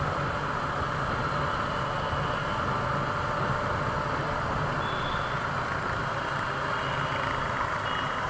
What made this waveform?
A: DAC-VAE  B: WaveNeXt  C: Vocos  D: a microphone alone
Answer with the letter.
D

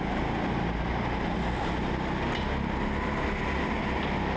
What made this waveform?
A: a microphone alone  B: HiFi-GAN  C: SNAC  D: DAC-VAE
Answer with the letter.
A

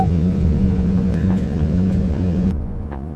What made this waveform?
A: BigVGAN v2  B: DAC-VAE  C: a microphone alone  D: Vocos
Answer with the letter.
D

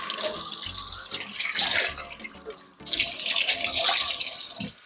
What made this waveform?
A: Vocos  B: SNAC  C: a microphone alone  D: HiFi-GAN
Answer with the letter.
C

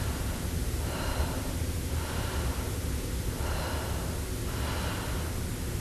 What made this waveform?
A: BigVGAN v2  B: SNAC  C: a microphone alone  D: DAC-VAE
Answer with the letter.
C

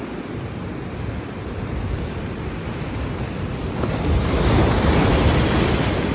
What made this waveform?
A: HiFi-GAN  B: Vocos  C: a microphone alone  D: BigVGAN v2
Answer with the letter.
C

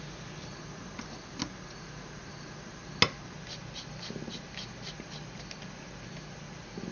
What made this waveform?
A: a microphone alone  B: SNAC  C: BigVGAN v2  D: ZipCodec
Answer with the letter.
A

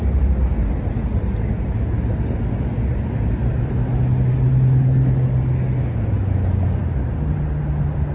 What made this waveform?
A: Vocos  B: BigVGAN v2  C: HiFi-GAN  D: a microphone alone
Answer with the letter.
D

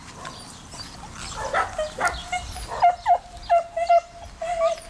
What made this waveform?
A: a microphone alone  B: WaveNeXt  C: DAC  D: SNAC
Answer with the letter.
A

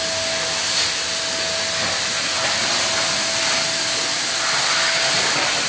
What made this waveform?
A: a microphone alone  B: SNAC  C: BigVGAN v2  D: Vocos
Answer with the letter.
A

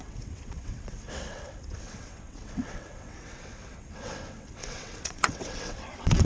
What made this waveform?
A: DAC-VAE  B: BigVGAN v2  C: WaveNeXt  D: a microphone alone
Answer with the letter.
C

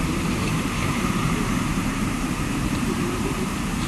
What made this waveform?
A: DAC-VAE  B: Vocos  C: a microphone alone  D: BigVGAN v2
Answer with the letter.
D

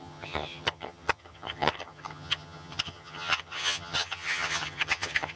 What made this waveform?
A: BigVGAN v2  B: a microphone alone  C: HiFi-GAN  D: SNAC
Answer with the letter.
C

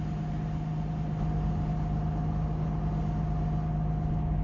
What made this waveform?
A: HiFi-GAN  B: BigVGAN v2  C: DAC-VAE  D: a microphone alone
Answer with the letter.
D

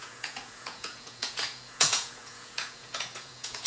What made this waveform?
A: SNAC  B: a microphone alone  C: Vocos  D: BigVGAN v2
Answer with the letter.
C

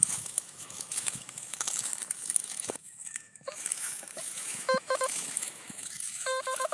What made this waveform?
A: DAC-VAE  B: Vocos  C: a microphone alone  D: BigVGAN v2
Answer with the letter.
A